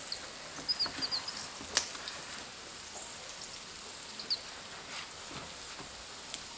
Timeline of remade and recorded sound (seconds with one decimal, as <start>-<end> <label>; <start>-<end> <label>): 0.0-6.6 recorded